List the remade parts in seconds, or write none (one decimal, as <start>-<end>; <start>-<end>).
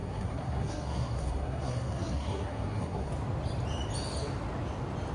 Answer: 0.0-3.1